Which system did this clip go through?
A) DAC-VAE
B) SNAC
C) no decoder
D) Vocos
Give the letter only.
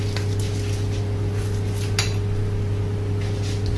C